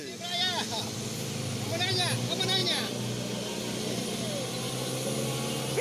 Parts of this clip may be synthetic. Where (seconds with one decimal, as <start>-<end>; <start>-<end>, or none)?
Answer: none